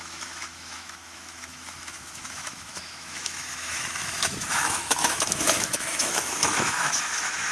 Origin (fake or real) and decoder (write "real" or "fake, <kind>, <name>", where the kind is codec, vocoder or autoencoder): fake, autoencoder, DAC-VAE